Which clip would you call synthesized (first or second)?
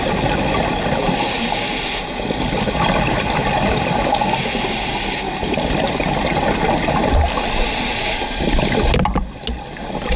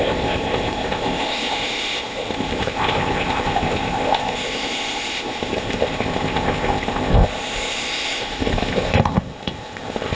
second